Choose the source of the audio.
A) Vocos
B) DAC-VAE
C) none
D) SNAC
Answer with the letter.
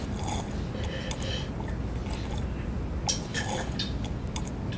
C